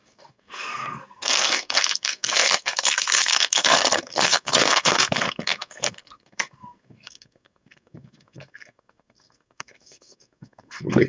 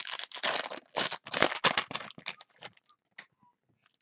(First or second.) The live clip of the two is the second